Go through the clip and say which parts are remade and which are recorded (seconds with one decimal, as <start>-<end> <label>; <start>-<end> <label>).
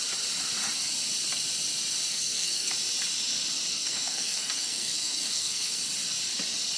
0.0-2.1 recorded; 2.1-2.7 remade; 2.7-3.7 recorded; 3.7-5.8 remade; 5.8-6.8 recorded